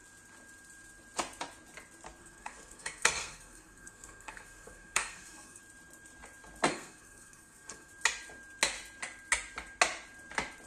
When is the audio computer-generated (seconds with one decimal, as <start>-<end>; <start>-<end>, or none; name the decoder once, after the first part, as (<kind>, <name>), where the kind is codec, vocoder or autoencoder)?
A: 2.2-5.6 (codec, SNAC); 6.7-7.9